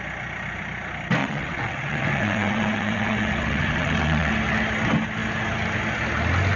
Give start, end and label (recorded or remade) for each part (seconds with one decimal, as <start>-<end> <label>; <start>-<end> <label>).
0.0-1.2 recorded; 1.2-4.3 remade; 4.3-6.6 recorded